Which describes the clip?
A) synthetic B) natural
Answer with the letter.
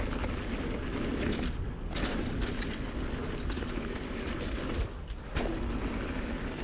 B